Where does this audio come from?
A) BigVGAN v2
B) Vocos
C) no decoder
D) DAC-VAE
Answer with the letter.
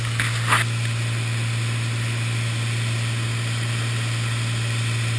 C